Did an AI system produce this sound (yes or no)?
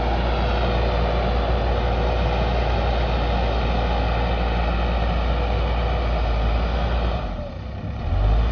no